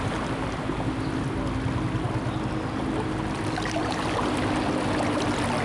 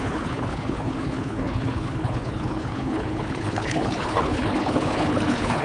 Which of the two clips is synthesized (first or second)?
second